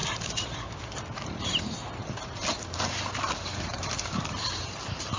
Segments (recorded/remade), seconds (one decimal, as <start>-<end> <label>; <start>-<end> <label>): 0.0-5.2 remade